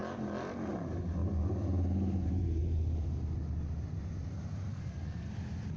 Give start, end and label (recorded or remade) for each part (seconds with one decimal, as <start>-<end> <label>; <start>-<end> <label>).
0.0-4.7 recorded; 4.7-5.3 remade; 5.3-5.8 recorded